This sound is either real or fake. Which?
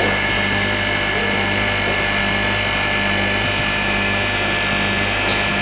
real